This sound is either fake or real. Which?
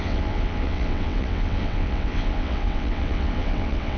fake